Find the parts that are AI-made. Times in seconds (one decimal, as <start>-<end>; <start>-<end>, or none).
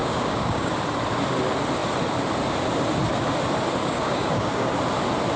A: 0.0-0.7; 3.8-4.7